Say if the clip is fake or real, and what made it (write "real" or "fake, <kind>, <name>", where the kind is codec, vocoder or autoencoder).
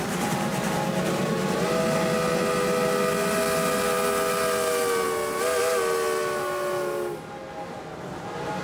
real